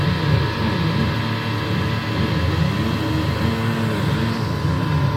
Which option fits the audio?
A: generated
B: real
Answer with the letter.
B